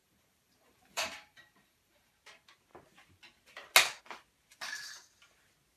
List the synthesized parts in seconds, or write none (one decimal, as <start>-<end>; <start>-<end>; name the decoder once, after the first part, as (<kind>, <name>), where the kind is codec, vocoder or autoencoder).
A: 0.0-2.1 (vocoder, BigVGAN v2)